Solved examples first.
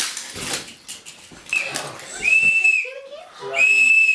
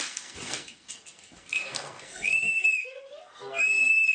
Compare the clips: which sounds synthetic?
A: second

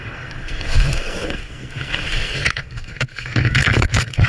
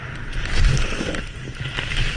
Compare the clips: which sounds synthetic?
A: first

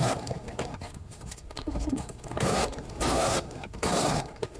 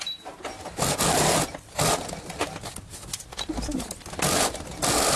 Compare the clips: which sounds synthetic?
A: first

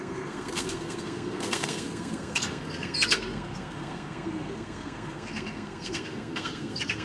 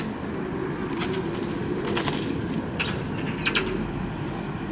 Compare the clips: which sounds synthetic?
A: first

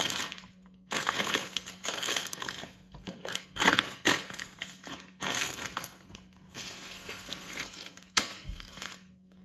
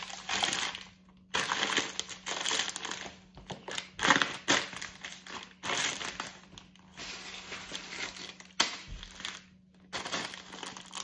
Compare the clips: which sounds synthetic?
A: first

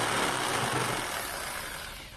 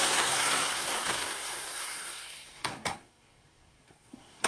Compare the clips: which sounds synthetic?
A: second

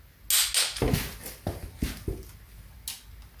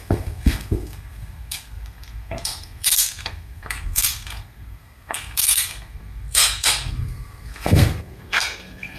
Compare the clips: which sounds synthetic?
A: second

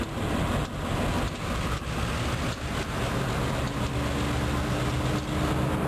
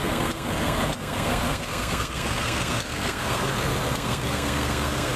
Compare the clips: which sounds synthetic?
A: second